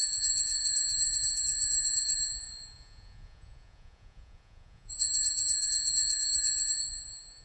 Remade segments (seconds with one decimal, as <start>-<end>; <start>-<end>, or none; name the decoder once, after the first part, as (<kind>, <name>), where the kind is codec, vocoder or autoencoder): 0.0-7.4 (vocoder, Vocos)